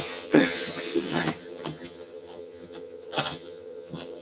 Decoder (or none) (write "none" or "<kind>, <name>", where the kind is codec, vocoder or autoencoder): vocoder, HiFi-GAN